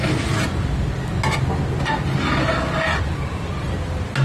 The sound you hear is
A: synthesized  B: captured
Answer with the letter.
B